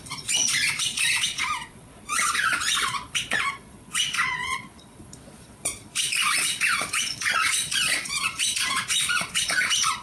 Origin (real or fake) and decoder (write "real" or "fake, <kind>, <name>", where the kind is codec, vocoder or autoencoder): fake, vocoder, Vocos